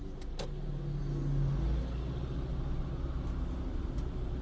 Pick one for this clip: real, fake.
real